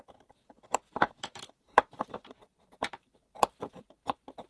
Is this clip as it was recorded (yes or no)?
no